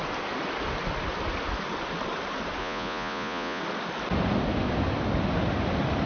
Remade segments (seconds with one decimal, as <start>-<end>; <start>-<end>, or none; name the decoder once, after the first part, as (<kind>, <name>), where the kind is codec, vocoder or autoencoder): 2.6-3.6 (vocoder, Vocos)